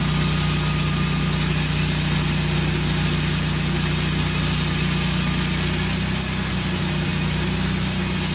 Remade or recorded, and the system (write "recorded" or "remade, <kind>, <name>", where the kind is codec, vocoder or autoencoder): recorded